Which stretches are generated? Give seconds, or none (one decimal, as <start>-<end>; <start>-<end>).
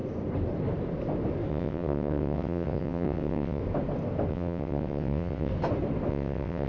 1.5-3.6; 4.3-5.5; 6.1-6.7